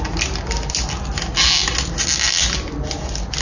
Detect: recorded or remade recorded